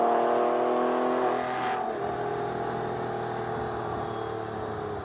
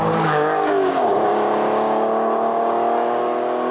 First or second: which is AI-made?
second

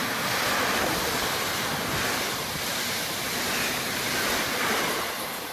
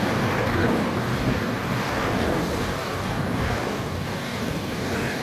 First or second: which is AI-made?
second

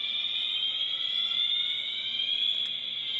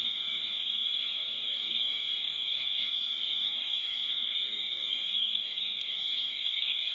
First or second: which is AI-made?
second